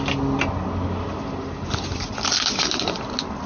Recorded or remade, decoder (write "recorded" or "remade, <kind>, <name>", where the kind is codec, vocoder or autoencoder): recorded